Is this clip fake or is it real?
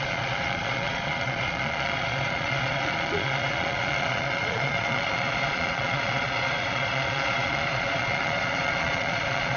fake